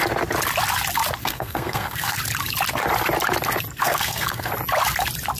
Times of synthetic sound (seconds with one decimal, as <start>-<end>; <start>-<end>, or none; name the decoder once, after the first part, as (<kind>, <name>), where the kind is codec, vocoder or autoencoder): 1.2-2.2 (codec, SNAC); 3.8-4.5